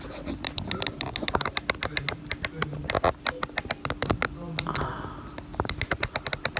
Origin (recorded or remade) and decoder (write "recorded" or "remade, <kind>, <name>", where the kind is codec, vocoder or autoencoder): recorded